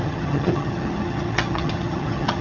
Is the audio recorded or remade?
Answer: remade